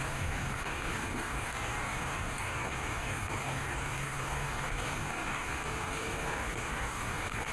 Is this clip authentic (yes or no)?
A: no